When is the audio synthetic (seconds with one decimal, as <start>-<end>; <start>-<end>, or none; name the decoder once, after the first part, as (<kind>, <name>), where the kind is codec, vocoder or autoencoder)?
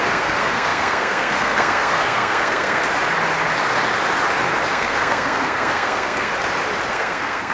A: 0.0-2.8 (codec, SNAC); 4.7-6.3; 6.9-7.5